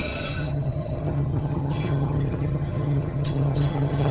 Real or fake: fake